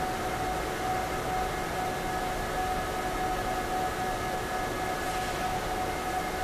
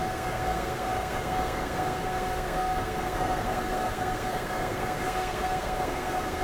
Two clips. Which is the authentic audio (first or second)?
first